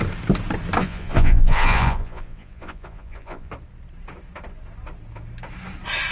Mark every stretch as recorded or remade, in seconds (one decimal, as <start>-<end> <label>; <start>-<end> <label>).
0.0-0.8 recorded; 0.8-3.5 remade; 3.5-6.1 recorded